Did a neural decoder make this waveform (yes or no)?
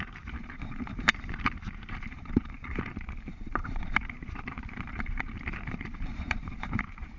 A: yes